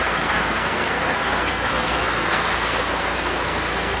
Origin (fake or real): fake